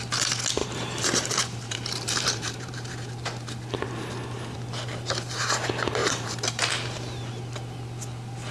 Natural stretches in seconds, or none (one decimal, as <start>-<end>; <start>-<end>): 0.0-0.6; 2.9-6.0; 6.7-8.5